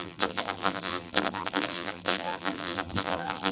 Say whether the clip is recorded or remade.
remade